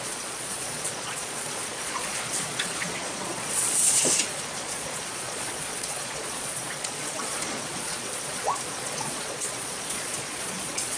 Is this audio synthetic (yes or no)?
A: yes